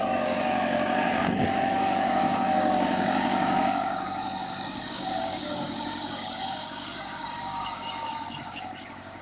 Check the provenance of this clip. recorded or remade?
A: remade